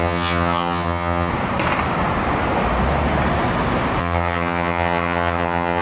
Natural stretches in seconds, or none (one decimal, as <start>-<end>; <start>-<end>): 1.3-4.0